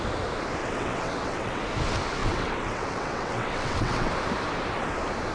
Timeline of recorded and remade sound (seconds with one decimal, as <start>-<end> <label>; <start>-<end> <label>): 0.0-0.6 recorded; 0.6-1.6 remade; 1.6-2.2 recorded; 2.2-4.1 remade; 4.1-5.3 recorded